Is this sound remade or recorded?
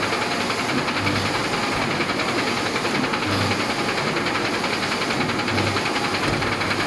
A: recorded